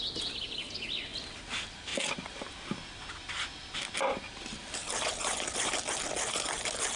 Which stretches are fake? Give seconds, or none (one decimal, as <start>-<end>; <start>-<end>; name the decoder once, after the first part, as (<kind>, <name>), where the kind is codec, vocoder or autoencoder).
none